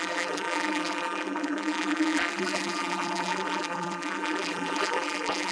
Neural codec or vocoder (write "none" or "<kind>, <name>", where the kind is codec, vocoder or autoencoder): vocoder, BigVGAN v2